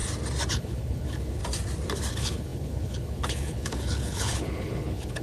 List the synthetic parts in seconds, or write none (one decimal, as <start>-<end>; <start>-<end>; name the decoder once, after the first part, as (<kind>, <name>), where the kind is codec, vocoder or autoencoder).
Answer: 0.5-1.4 (codec, HILCodec); 2.1-5.2